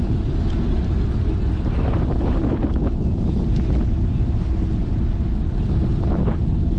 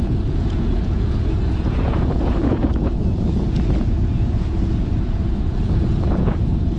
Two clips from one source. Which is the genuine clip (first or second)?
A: first